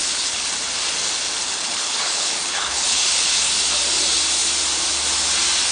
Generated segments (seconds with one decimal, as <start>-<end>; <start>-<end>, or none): 0.0-0.5; 1.5-3.5